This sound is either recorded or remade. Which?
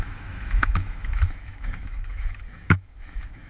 remade